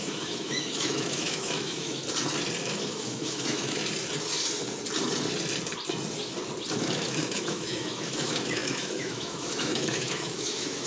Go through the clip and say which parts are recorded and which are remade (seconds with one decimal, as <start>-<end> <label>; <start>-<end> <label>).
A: 0.0-2.0 remade; 2.0-2.6 recorded; 2.6-3.8 remade; 3.8-6.7 recorded; 6.7-10.9 remade